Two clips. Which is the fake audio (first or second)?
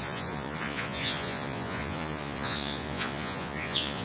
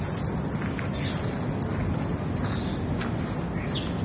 first